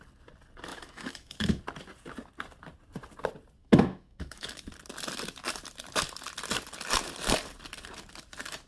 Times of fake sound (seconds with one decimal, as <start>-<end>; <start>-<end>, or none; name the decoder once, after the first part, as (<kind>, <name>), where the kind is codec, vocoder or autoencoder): 0.7-1.6 (autoencoder, DAC-VAE); 3.6-4.7